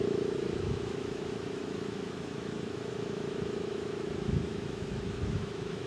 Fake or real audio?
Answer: fake